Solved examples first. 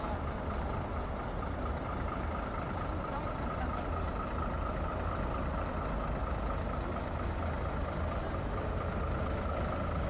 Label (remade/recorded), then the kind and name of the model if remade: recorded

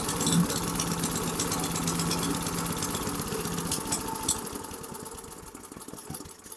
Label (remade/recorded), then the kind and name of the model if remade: recorded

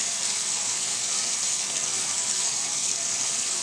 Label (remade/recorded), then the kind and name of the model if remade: remade, codec, SNAC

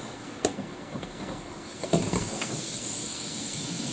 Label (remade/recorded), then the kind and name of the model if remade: remade, codec, SNAC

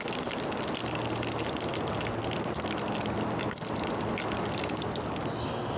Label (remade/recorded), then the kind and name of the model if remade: recorded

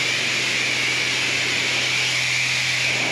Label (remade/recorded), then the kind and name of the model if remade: recorded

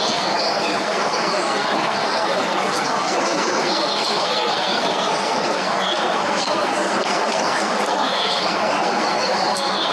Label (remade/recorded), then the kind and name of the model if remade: remade, codec, SNAC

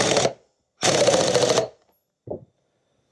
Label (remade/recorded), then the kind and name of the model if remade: recorded